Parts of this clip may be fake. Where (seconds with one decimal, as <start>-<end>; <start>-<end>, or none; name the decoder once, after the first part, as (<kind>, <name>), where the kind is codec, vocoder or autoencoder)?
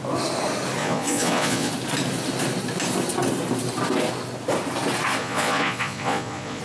0.8-1.7 (vocoder, Vocos); 5.2-6.6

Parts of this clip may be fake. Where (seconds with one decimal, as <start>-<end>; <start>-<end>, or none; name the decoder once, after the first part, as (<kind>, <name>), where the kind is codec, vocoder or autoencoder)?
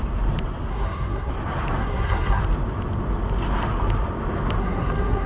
0.7-1.3 (codec, SNAC); 1.8-2.4; 4.6-5.3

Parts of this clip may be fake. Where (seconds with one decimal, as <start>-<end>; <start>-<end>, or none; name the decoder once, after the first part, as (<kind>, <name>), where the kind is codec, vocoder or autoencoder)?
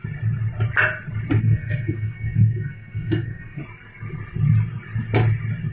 1.4-3.6 (codec, SNAC)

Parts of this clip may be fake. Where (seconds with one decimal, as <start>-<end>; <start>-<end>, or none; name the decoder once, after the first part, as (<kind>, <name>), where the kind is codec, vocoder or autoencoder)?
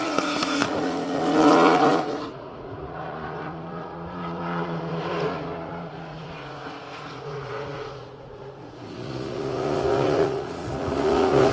0.0-11.5 (vocoder, Vocos)